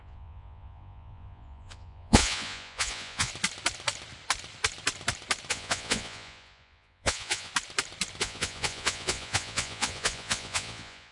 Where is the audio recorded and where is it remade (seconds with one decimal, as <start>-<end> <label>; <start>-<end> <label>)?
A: 0.0-3.3 remade; 3.3-5.5 recorded; 5.5-7.5 remade; 7.5-8.2 recorded; 8.2-11.1 remade